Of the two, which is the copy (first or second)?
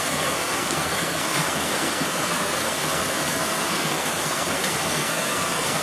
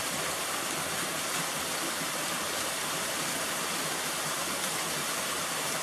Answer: first